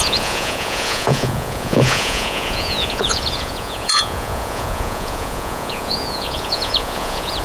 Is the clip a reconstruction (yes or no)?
yes